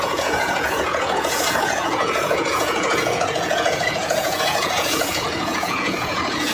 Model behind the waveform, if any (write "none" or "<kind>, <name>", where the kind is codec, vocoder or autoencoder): vocoder, Vocos